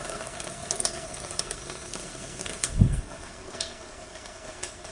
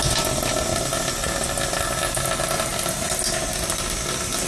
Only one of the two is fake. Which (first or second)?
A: first